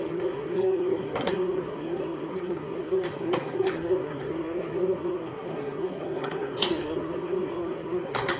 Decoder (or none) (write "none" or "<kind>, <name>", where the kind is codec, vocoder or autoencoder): codec, SNAC